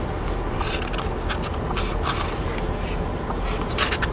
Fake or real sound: real